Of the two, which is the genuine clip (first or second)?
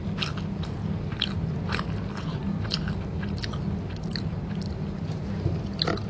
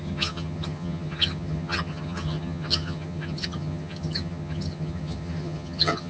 first